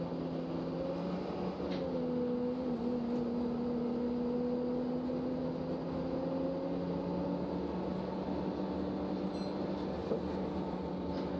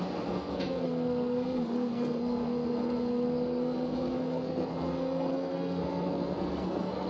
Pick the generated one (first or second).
second